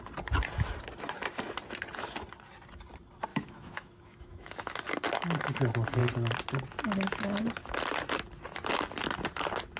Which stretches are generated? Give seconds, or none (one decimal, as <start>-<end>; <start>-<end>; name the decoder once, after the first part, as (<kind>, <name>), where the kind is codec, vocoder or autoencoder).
3.3-4.7 (autoencoder, DAC-VAE)